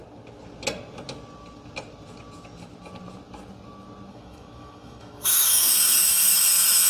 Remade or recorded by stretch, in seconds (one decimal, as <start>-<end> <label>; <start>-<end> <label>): 0.0-4.1 recorded; 4.1-6.9 remade